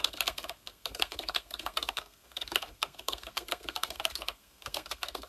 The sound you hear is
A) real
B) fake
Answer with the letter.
B